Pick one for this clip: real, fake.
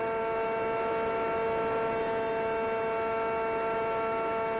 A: real